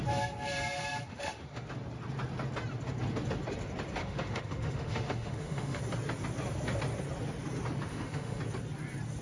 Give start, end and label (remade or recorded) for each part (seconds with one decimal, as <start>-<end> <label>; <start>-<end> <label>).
0.0-1.1 recorded; 1.1-1.7 remade; 1.7-4.0 recorded; 4.0-5.8 remade; 5.8-7.9 recorded; 7.9-8.4 remade; 8.4-9.2 recorded